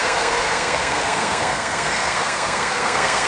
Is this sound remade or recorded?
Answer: remade